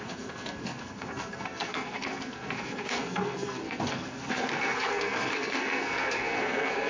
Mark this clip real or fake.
fake